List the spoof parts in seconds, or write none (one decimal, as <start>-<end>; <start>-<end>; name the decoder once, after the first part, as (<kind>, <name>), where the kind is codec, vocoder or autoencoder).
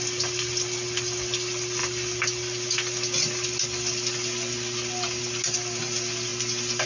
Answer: none